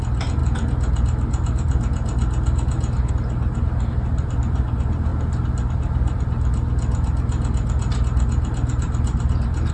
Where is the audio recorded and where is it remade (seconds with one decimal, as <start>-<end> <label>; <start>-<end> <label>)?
0.0-9.7 recorded